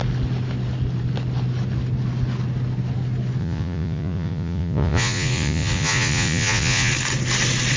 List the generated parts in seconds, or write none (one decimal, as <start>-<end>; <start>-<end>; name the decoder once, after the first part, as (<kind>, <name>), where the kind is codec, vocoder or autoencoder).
3.4-6.9 (vocoder, Vocos)